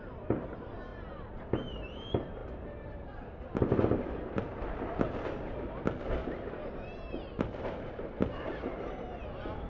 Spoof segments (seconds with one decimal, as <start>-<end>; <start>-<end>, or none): 0.9-1.8; 2.4-3.4; 6.2-9.2